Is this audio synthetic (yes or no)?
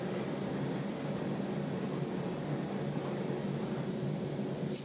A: no